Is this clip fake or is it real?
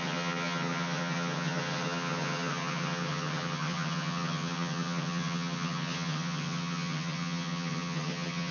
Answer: fake